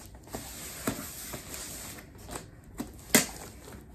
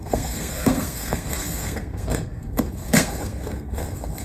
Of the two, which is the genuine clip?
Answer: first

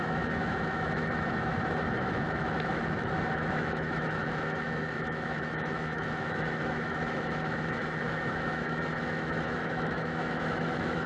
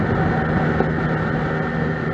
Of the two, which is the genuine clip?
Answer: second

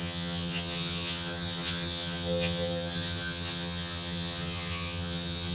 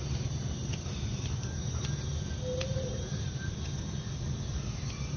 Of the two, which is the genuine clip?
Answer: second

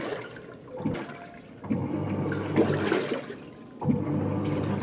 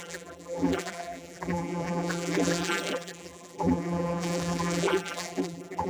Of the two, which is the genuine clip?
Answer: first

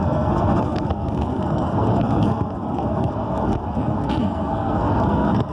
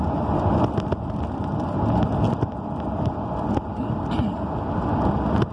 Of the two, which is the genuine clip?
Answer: second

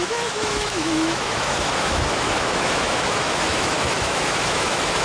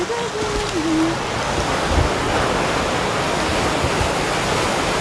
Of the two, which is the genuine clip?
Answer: second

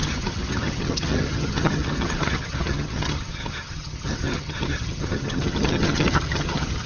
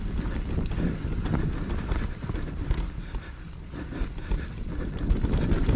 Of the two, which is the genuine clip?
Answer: second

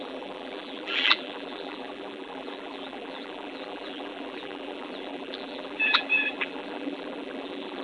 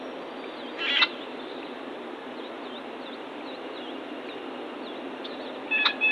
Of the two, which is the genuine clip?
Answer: second